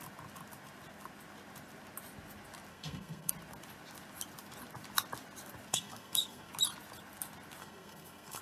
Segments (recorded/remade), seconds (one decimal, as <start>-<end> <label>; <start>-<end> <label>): 0.0-2.7 recorded; 2.7-3.3 remade; 3.3-5.7 recorded; 5.7-6.5 remade; 6.5-7.6 recorded; 7.6-8.4 remade